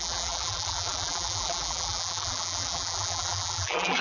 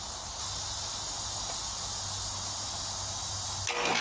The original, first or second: second